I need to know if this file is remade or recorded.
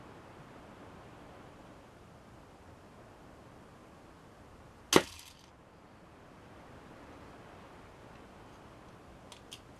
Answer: recorded